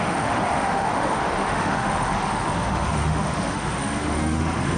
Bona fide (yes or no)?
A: no